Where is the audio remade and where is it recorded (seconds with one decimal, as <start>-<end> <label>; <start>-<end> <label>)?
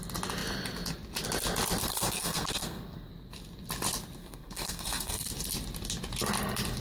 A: 0.0-1.8 recorded; 1.8-3.1 remade; 3.1-4.2 recorded; 4.2-5.3 remade; 5.3-6.8 recorded